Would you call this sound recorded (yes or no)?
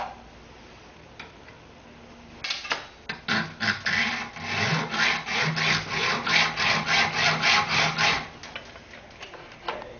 yes